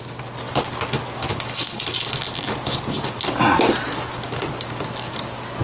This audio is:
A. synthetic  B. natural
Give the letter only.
B